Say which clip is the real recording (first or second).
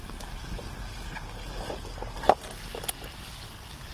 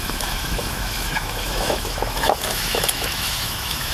first